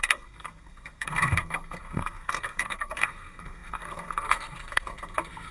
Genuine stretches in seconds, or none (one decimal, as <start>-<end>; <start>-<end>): none